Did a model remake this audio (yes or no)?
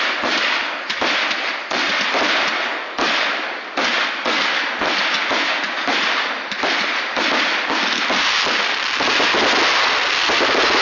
no